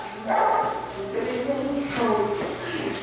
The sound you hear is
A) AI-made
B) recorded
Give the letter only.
B